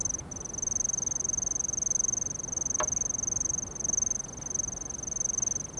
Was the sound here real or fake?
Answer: real